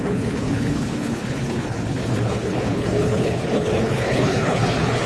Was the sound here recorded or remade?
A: remade